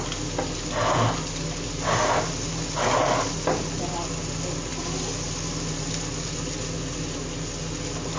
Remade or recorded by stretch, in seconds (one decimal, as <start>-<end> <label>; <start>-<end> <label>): 0.0-8.2 recorded